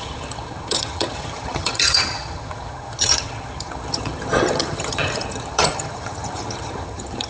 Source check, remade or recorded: remade